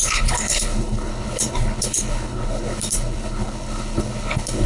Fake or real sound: fake